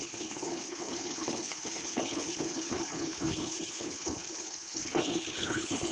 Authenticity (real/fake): fake